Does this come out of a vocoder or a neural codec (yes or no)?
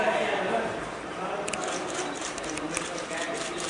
yes